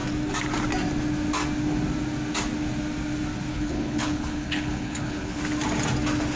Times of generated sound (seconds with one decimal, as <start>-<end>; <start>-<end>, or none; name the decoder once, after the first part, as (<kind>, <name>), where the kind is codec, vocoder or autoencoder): 3.5-5.4 (codec, HILCodec)